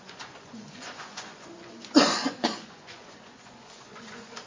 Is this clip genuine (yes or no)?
no